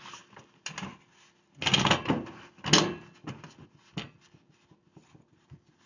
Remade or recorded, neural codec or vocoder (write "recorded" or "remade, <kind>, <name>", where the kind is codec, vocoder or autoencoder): recorded